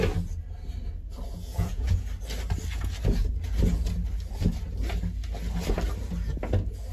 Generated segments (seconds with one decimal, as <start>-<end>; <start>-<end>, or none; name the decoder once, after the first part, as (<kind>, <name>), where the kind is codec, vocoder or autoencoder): 1.5-2.1 (vocoder, Vocos)